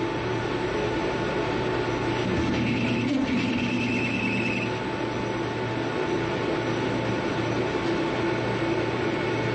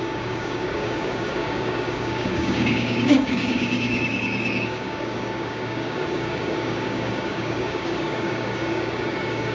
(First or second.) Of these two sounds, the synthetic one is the second